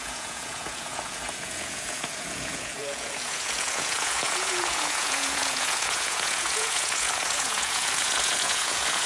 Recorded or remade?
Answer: remade